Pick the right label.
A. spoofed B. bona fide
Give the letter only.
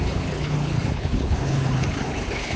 A